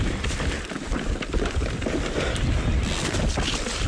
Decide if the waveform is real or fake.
real